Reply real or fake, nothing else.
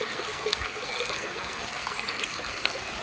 fake